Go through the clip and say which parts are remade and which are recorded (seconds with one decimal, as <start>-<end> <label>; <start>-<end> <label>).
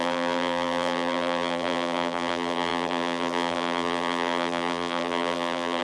0.0-5.8 remade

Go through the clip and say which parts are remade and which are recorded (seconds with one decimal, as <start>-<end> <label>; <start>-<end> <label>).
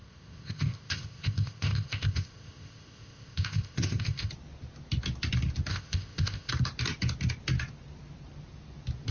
0.0-4.3 remade; 4.3-5.7 recorded; 5.7-6.5 remade; 6.5-9.1 recorded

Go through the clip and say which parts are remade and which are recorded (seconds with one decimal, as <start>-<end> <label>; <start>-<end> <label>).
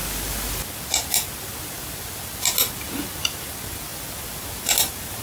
0.0-5.2 recorded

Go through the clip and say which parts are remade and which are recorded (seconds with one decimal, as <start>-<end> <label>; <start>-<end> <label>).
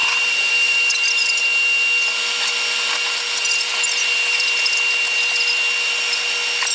0.0-1.4 remade; 1.4-4.0 recorded; 4.0-4.7 remade; 4.7-6.7 recorded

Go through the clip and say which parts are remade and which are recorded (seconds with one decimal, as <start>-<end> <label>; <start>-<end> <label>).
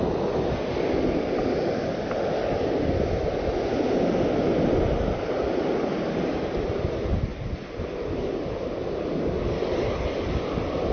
0.0-10.9 recorded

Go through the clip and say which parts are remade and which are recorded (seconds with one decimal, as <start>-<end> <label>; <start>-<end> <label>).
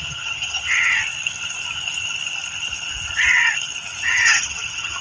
0.0-1.0 remade; 1.0-4.0 recorded; 4.0-5.0 remade